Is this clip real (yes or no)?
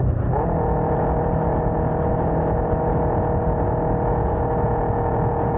yes